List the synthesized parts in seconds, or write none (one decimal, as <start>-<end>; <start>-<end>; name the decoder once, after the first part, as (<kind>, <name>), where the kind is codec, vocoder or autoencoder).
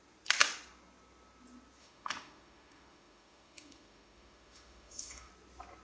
1.8-5.3 (autoencoder, DAC-VAE)